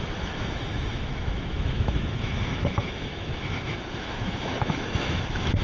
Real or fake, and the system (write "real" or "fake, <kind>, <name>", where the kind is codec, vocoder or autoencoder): fake, autoencoder, DAC-VAE